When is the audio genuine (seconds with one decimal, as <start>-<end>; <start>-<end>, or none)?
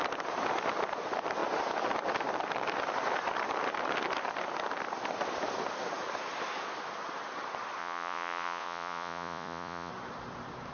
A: 0.0-7.8; 9.9-10.7